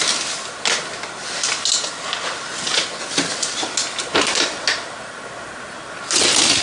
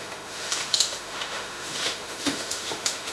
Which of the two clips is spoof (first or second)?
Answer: second